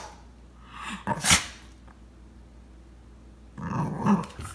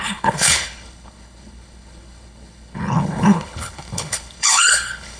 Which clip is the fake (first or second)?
second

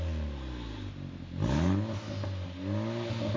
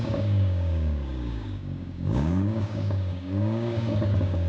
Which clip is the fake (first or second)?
second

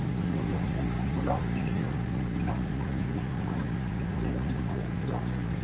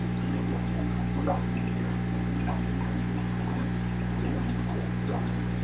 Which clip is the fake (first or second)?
first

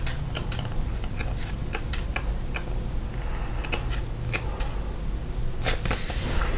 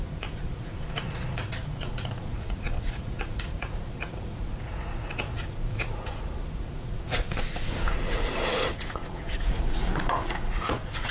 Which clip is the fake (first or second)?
second